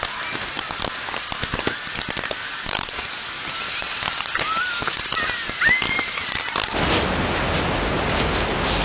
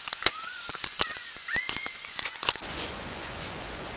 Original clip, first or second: first